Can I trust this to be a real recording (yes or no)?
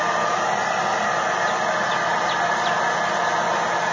yes